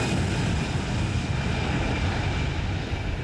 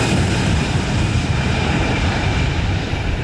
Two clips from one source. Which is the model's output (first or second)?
second